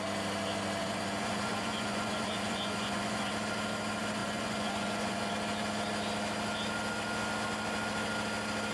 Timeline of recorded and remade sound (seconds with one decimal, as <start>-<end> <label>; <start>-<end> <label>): 0.0-0.8 recorded; 0.8-3.3 remade; 3.3-4.2 recorded; 4.2-5.3 remade; 5.3-8.7 recorded

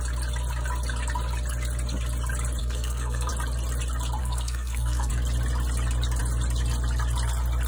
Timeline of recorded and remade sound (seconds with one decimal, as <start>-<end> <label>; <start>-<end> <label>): 0.0-2.6 recorded; 2.6-3.3 remade; 3.3-4.2 recorded; 4.2-5.1 remade; 5.1-7.7 recorded